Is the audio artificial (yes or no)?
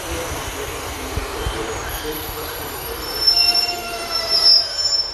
yes